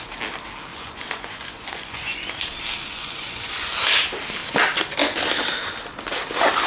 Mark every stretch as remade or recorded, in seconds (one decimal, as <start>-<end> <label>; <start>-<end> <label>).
0.0-0.7 recorded; 0.7-2.3 remade; 2.3-2.9 recorded; 2.9-3.7 remade; 3.7-6.7 recorded